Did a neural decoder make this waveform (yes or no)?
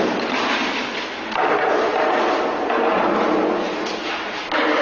no